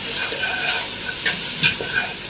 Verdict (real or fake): real